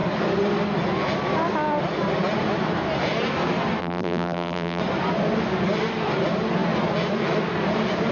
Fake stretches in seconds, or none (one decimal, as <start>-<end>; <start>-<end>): 3.8-4.8